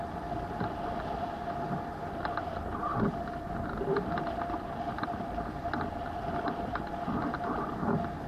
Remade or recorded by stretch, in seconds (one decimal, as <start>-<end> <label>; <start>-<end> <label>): 0.0-8.3 recorded

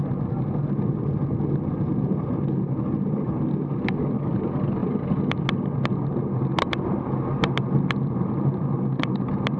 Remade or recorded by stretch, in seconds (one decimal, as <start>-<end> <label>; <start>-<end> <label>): 0.0-9.6 recorded

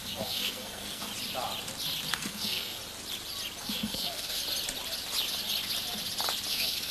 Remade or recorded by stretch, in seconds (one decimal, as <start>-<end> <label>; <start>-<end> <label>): 0.0-1.1 remade; 1.1-2.1 recorded; 2.1-2.8 remade; 2.8-3.6 recorded; 3.6-4.4 remade; 4.4-6.5 recorded; 6.5-6.9 remade

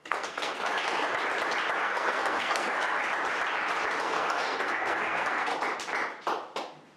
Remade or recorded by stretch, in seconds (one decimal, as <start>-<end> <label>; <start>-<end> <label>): 0.0-1.1 remade; 1.1-1.8 recorded; 1.8-3.0 remade; 3.0-4.0 recorded; 4.0-5.5 remade; 5.5-7.0 recorded

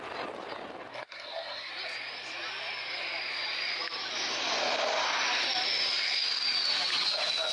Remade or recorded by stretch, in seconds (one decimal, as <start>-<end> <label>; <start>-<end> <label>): 0.0-0.9 recorded; 0.9-1.7 remade; 1.7-7.5 recorded

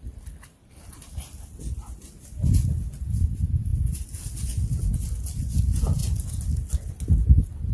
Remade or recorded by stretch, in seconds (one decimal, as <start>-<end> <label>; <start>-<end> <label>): 0.0-7.7 recorded